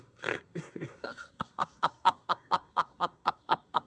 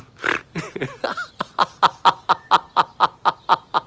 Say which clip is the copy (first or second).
first